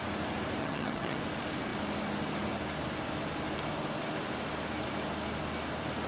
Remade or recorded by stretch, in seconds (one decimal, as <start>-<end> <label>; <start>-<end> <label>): 0.0-0.6 recorded; 0.6-1.2 remade; 1.2-6.1 recorded